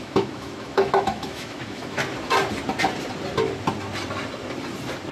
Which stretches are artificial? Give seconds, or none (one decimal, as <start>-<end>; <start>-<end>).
0.0-2.0